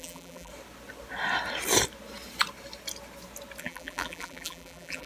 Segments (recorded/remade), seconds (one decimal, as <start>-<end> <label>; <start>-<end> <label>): 0.0-0.5 remade; 0.5-3.6 recorded; 3.6-5.1 remade